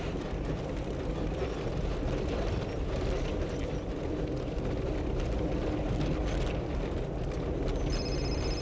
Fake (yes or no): no